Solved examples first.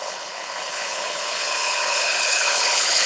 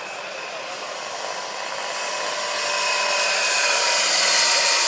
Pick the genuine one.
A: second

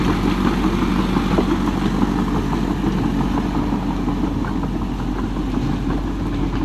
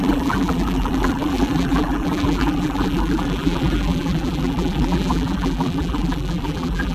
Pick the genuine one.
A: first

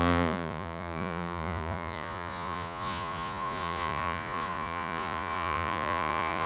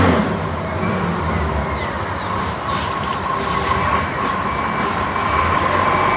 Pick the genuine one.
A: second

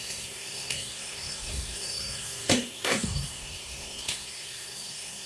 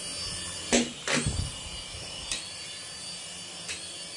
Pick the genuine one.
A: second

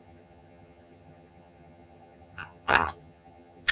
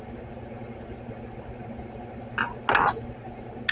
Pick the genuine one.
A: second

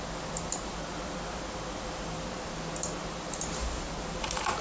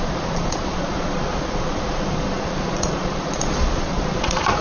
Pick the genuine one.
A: first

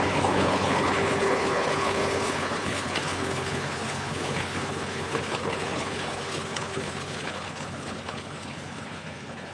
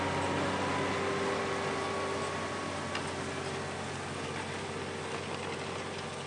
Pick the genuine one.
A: second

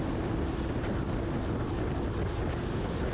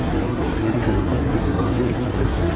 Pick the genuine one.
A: first